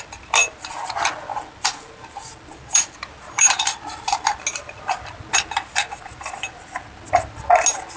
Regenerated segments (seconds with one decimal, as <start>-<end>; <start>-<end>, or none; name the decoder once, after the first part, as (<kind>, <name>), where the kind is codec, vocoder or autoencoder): 1.3-3.6 (vocoder, BigVGAN v2)